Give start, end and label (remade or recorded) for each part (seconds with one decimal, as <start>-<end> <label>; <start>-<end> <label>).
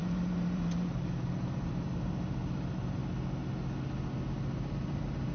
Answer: 0.0-3.0 remade; 3.0-4.7 recorded; 4.7-5.3 remade